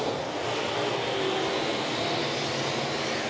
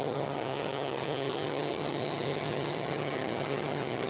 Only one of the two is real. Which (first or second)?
first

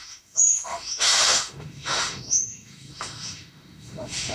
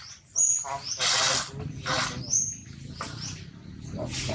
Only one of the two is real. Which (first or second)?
second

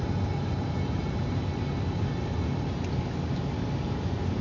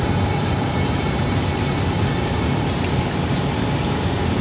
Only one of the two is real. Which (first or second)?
first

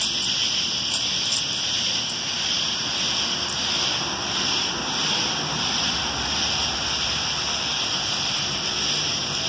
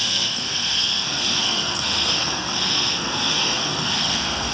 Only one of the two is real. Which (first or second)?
first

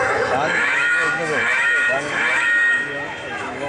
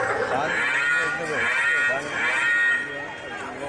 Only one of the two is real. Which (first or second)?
second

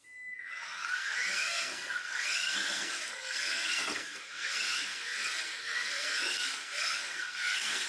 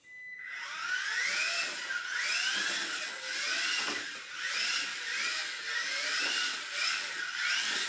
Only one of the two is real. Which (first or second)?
second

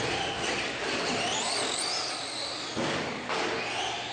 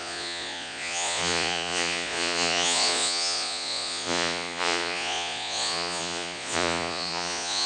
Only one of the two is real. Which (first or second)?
first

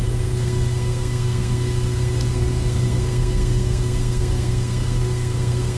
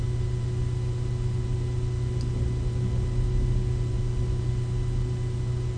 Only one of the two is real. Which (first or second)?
second